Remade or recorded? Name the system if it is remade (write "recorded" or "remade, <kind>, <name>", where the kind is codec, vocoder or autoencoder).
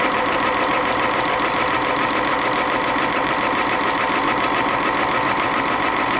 recorded